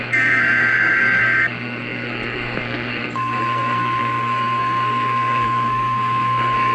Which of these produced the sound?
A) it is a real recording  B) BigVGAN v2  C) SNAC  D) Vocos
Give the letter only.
C